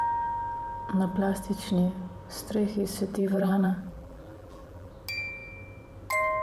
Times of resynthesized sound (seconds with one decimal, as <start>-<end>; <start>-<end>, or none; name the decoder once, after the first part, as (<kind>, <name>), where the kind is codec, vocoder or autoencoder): 3.1-4.9 (vocoder, BigVGAN v2)